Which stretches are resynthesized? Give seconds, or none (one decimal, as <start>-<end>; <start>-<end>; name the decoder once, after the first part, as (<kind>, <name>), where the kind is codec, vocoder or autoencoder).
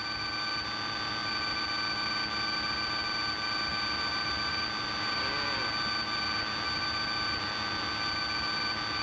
none